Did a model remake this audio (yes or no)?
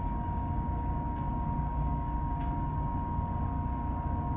yes